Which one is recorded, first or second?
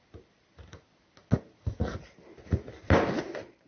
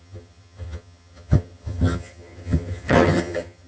first